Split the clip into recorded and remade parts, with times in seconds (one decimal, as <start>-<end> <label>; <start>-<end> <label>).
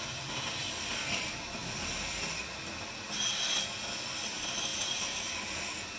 0.0-4.7 recorded; 4.7-5.3 remade; 5.3-6.0 recorded